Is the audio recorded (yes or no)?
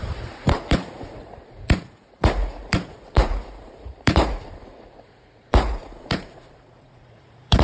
no